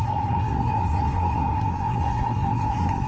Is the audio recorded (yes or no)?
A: no